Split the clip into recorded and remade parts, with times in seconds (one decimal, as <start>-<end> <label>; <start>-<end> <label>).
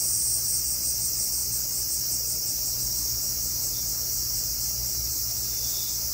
0.0-6.1 recorded